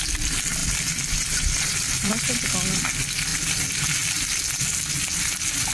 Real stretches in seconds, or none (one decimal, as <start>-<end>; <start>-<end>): 0.0-0.6; 2.1-3.3; 4.6-5.7